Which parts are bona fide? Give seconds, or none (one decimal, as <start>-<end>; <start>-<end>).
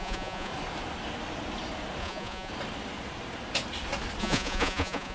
0.5-2.0; 2.5-4.2